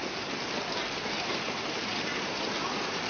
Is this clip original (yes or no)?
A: yes